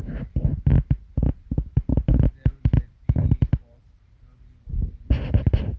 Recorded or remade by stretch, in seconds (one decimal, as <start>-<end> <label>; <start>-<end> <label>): 0.0-5.8 recorded

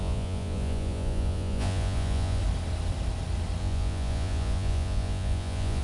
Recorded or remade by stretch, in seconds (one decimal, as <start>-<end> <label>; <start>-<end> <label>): 0.0-2.4 remade; 2.4-3.6 recorded; 3.6-5.8 remade

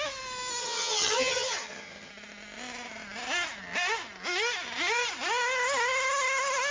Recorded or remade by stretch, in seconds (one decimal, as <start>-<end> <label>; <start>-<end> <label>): 0.0-0.6 recorded; 0.6-2.1 remade; 2.1-6.7 recorded

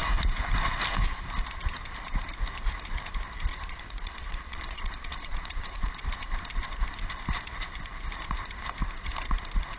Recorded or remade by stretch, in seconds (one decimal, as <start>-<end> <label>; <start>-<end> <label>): 0.0-3.5 recorded; 3.5-5.9 remade; 5.9-9.8 recorded

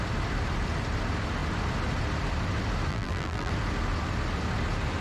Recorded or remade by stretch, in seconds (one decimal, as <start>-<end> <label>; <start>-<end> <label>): 0.0-2.9 recorded; 2.9-3.5 remade; 3.5-5.0 recorded

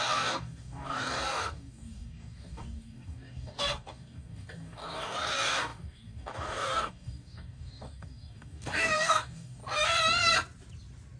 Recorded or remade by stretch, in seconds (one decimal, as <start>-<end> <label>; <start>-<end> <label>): 0.0-9.6 remade; 9.6-11.2 recorded